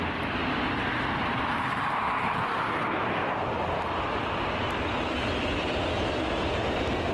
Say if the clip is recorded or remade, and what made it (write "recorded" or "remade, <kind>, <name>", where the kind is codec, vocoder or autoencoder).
recorded